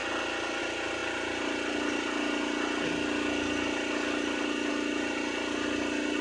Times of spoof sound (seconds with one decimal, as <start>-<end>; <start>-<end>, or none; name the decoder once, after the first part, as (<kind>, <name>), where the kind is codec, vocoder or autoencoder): none